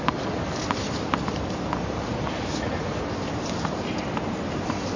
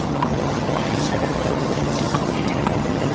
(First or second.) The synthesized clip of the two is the second